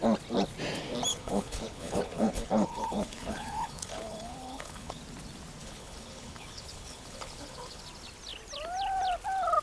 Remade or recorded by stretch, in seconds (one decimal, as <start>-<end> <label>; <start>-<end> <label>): 0.0-1.1 recorded; 1.1-5.0 remade; 5.0-5.6 recorded; 5.6-7.8 remade; 7.8-9.6 recorded